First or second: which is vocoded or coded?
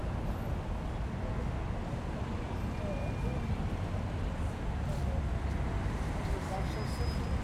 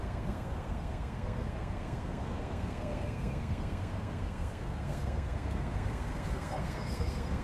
second